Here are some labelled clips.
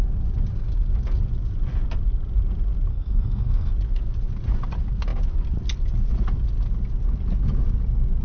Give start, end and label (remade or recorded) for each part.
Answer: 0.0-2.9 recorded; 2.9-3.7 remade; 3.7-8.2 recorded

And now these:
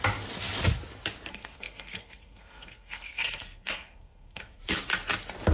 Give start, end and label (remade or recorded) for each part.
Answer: 0.0-1.3 recorded; 1.3-4.6 remade; 4.6-5.5 recorded

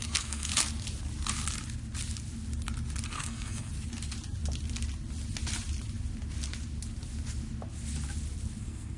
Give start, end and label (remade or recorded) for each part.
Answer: 0.0-0.5 remade; 0.5-3.1 recorded; 3.1-3.7 remade; 3.7-8.6 recorded; 8.6-9.0 remade

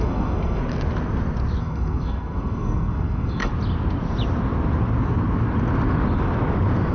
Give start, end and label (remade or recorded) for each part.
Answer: 0.0-0.6 remade; 0.6-1.6 recorded; 1.6-3.5 remade; 3.5-6.9 recorded

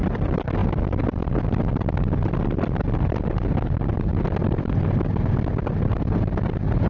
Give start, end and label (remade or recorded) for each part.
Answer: 0.0-6.9 recorded